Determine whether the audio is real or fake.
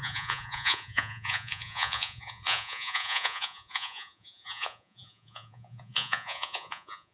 fake